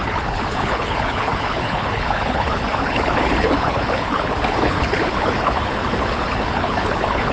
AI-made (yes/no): yes